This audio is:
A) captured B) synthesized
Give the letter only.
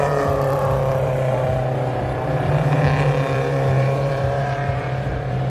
B